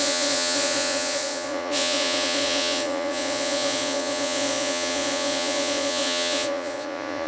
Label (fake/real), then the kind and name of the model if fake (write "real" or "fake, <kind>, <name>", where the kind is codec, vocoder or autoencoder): fake, vocoder, Vocos